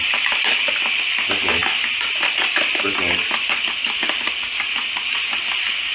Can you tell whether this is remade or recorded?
recorded